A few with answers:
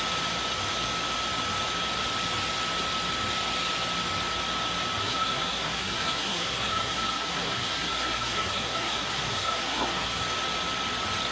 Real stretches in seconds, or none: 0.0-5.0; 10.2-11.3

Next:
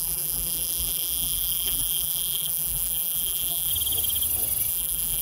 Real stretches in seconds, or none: 3.7-4.7

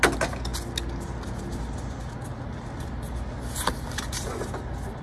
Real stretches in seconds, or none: 0.0-5.0

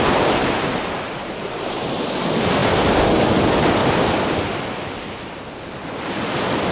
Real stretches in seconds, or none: 0.0-6.7